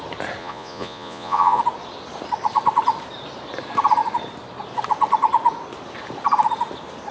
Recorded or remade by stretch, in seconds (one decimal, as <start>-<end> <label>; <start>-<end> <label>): 0.0-0.4 recorded; 0.4-1.6 remade; 1.6-7.1 recorded